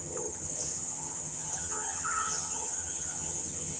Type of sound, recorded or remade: remade